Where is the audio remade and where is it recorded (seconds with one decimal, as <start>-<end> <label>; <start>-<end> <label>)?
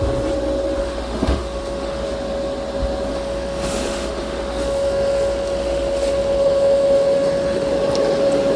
0.0-0.8 recorded; 0.8-2.0 remade; 2.0-3.1 recorded; 3.1-7.7 remade; 7.7-8.6 recorded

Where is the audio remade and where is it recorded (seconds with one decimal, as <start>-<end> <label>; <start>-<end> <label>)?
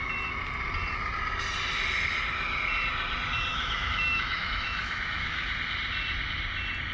0.0-3.5 recorded; 3.5-5.5 remade; 5.5-6.9 recorded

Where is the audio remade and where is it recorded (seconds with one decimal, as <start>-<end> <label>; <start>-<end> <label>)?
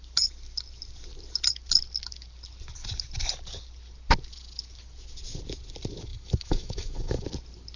0.0-6.1 recorded; 6.1-7.2 remade; 7.2-7.8 recorded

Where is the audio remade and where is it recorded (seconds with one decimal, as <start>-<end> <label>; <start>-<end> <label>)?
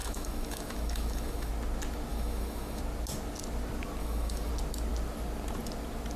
0.0-1.5 remade; 1.5-2.1 recorded; 2.1-2.8 remade; 2.8-4.0 recorded; 4.0-4.5 remade; 4.5-6.2 recorded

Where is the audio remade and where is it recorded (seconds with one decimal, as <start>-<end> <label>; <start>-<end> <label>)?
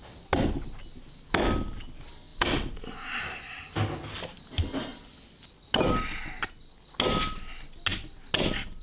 0.0-8.8 recorded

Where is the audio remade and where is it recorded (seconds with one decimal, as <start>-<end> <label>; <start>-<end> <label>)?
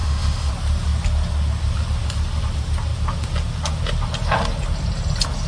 0.0-0.5 remade; 0.5-5.5 recorded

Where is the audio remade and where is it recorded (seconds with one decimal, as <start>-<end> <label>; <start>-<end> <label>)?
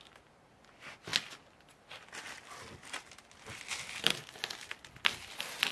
0.0-5.7 recorded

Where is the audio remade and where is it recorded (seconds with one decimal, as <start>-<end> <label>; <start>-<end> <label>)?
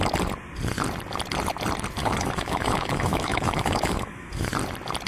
0.0-2.0 recorded; 2.0-4.5 remade; 4.5-5.1 recorded